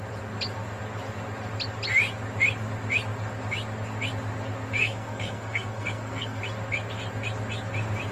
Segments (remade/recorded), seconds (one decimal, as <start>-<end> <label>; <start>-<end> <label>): 0.0-4.8 recorded; 4.8-6.4 remade; 6.4-8.1 recorded